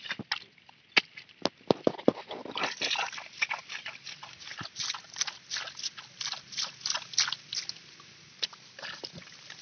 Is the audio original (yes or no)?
yes